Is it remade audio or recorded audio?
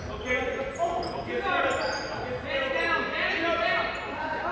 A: recorded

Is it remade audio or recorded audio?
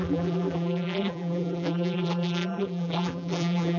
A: remade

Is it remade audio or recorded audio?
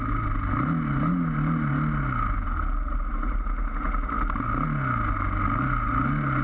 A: recorded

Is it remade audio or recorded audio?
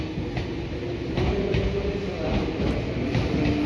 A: recorded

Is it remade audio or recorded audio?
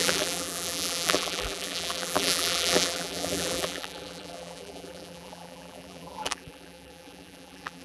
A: remade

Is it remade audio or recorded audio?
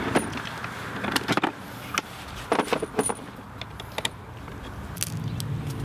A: recorded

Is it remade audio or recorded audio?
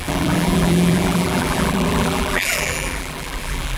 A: remade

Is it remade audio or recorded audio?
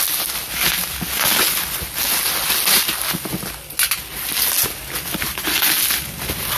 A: recorded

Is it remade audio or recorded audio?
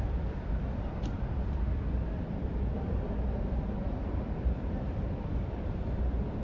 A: remade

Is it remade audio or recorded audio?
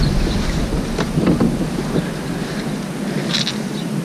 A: recorded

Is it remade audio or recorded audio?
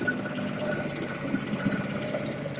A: recorded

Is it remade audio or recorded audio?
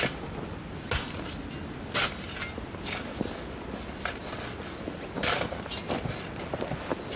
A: recorded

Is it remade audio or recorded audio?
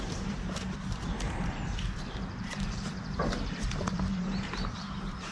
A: remade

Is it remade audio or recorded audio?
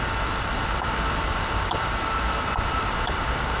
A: remade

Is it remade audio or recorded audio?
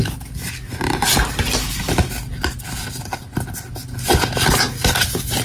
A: recorded